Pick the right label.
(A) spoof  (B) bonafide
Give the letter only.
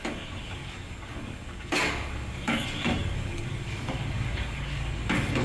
A